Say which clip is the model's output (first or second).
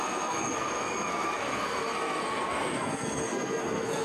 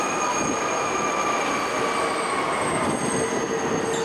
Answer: first